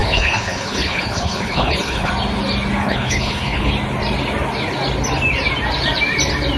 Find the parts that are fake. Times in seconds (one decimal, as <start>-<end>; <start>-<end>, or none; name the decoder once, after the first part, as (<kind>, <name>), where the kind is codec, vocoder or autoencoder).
0.0-2.1 (codec, HILCodec); 2.8-3.7